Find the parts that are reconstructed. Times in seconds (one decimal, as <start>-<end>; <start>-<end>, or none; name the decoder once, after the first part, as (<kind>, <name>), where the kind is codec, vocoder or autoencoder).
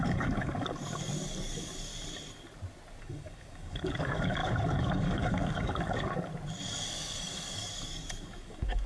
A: 0.0-1.9 (codec, DAC); 3.0-6.3; 6.9-8.9